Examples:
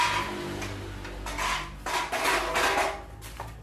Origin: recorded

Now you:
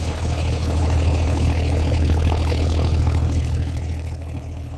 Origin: remade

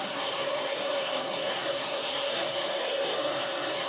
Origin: remade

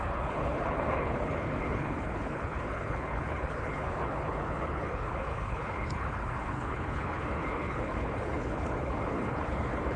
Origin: remade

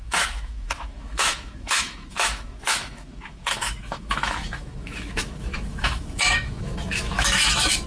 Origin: remade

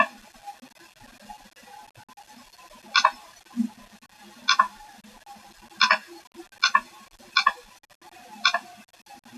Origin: recorded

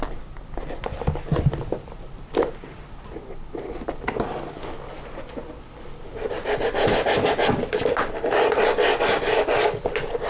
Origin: recorded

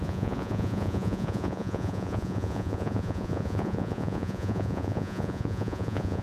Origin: remade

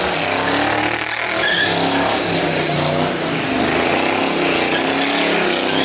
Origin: recorded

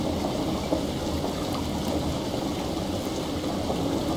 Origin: recorded